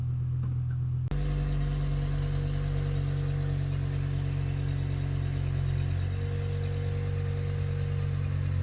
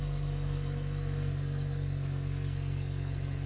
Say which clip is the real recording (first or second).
first